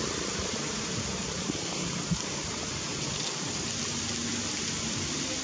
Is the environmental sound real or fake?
real